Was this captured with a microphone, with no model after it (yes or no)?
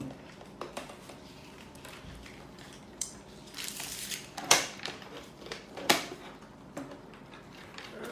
no